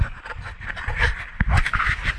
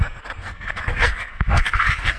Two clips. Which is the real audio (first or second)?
first